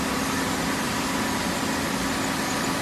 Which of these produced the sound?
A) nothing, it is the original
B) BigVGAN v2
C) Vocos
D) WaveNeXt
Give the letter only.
A